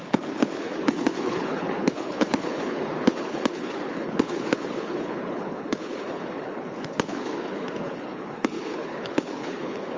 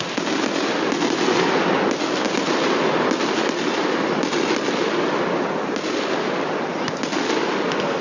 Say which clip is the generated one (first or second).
first